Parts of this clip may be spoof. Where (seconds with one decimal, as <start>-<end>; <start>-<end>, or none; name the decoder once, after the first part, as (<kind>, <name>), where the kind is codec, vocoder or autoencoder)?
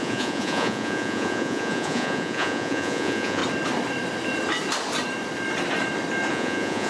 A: 0.0-3.4 (vocoder, Vocos); 6.3-6.9